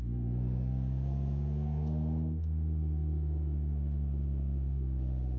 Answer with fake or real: fake